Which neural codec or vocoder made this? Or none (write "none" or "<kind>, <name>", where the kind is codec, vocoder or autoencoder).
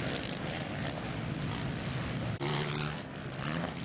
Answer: none